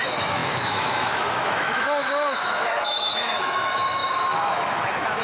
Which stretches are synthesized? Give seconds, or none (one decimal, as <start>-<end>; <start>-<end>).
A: 0.0-5.2